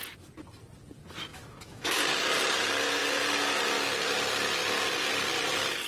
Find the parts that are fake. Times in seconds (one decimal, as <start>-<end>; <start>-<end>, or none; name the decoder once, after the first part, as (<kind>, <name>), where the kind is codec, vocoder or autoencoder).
1.3-2.0 (autoencoder, DAC-VAE)